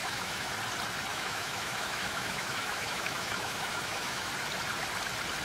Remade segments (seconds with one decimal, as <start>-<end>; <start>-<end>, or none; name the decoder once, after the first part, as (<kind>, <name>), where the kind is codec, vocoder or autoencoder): 0.0-0.5 (autoencoder, DAC-VAE); 1.1-4.3